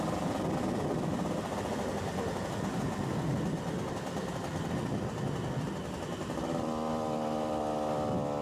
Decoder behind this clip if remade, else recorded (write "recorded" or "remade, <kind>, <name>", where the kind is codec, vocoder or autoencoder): recorded